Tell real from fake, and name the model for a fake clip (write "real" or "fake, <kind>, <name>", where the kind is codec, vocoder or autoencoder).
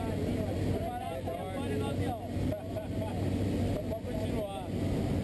real